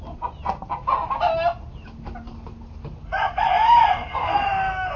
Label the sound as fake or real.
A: real